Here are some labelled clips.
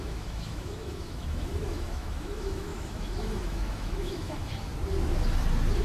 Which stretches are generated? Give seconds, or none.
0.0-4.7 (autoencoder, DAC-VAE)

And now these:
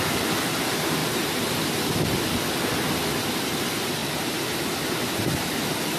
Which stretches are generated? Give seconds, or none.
1.0-1.6 (vocoder, BigVGAN v2); 4.0-4.6

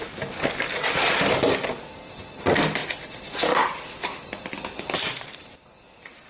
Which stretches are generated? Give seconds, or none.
none

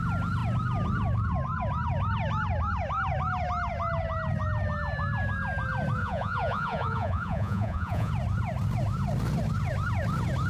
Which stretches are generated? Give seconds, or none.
6.0-8.1 (vocoder, Vocos)